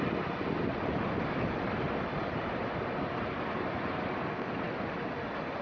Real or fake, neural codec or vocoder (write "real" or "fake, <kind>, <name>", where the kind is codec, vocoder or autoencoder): real